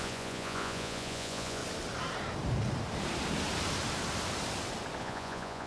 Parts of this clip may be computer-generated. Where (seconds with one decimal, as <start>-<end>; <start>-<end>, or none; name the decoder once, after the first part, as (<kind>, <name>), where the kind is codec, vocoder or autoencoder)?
0.0-1.6 (vocoder, Vocos); 5.0-5.7